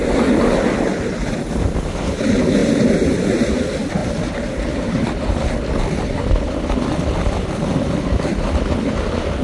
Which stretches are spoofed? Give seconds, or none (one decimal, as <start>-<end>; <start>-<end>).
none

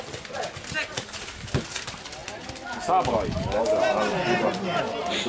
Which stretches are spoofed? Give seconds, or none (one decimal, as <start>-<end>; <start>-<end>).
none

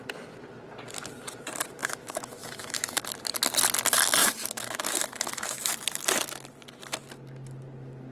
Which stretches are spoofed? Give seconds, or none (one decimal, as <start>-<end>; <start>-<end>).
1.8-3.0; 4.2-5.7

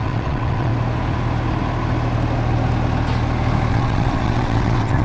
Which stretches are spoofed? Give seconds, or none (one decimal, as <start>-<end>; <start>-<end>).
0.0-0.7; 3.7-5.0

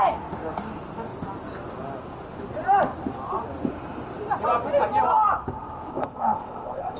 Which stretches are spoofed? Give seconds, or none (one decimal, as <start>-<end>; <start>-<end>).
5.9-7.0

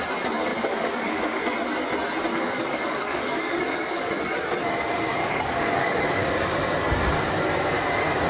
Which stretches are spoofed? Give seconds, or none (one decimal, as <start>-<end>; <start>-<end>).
0.5-1.4; 2.3-4.2; 5.2-6.3